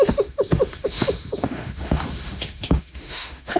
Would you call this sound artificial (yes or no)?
yes